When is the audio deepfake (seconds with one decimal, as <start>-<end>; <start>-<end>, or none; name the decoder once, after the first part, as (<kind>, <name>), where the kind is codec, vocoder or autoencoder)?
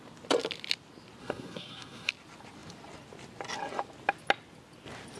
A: 1.2-2.1 (codec, SNAC)